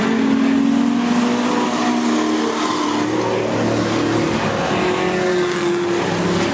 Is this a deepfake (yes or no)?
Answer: no